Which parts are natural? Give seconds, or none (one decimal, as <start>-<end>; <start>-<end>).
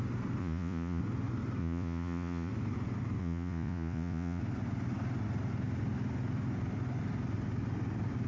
0.0-0.4; 1.0-1.6; 2.5-3.2; 4.4-8.3